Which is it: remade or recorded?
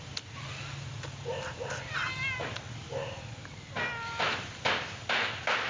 recorded